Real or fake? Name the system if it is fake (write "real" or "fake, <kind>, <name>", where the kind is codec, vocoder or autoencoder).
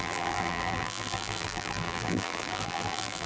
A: fake, vocoder, BigVGAN v2